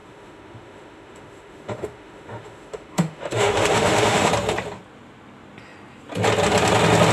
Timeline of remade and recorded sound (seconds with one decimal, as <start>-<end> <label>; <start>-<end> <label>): 0.0-4.3 remade; 4.3-7.1 recorded